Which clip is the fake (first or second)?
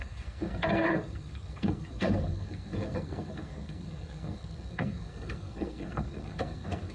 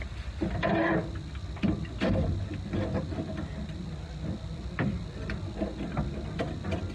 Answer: first